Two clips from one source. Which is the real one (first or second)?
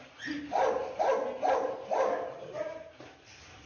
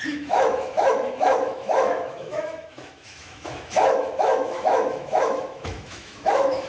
first